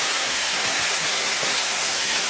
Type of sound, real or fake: fake